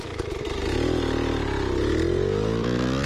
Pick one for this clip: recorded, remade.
recorded